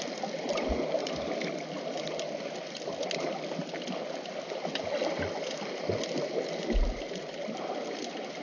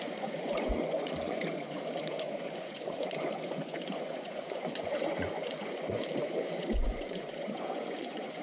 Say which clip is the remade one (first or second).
second